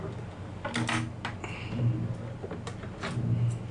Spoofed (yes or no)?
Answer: no